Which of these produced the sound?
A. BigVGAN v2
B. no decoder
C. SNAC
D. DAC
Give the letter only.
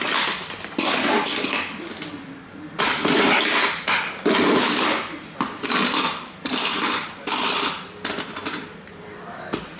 A